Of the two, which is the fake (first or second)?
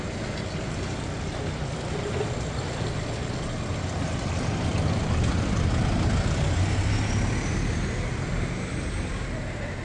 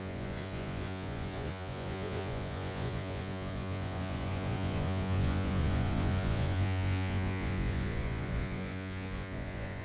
second